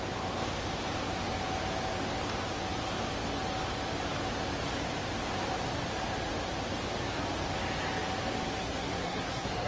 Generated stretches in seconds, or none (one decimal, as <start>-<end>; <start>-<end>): 8.6-9.7